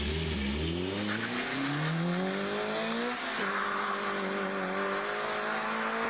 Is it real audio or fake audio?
real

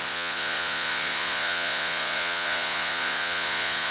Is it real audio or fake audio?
fake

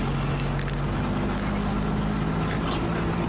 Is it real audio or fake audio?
real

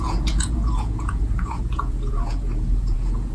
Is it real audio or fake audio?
fake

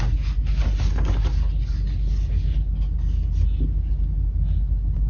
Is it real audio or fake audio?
real